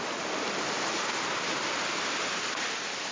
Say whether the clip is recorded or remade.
recorded